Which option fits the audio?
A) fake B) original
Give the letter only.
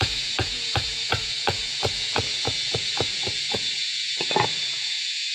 A